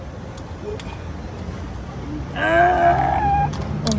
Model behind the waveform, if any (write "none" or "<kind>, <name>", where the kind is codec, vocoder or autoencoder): none